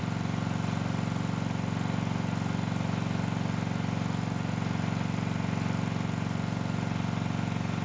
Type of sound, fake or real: real